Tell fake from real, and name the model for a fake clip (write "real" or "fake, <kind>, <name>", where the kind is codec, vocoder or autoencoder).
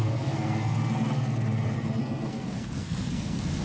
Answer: fake, codec, SNAC